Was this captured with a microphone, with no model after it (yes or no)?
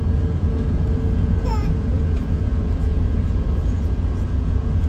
no